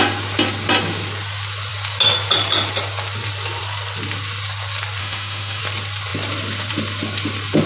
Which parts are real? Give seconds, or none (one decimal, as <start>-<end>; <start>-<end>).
0.0-5.0; 5.6-7.7